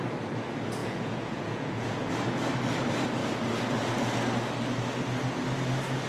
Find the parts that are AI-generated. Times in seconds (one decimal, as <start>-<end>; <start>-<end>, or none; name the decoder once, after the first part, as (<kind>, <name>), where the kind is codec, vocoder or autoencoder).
0.8-2.1 (vocoder, Vocos)